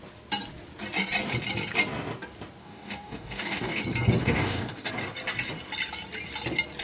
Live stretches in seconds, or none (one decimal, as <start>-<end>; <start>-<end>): 0.0-2.6; 3.8-4.2; 4.9-6.8